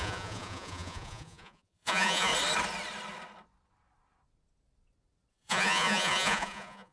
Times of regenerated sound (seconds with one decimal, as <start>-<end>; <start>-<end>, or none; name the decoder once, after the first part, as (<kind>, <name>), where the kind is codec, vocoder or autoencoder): 0.0-2.3 (vocoder, Vocos); 5.3-6.9